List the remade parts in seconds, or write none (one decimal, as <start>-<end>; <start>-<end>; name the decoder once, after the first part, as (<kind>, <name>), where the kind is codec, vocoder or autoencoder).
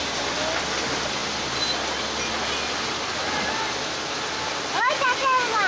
none